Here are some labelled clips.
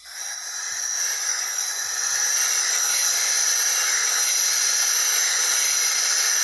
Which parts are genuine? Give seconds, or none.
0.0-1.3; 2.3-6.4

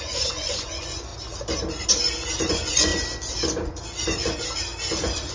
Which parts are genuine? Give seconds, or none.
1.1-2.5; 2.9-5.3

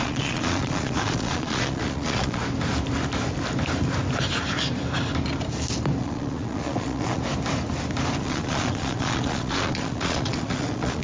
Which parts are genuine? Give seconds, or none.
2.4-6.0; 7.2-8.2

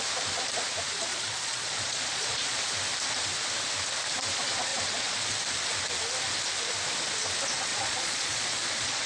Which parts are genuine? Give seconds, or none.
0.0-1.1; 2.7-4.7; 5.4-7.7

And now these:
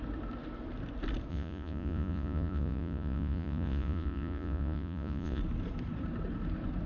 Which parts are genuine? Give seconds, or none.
0.0-1.3; 5.4-6.9

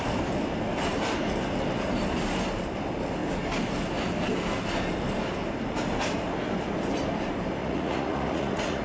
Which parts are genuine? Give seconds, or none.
0.0-7.6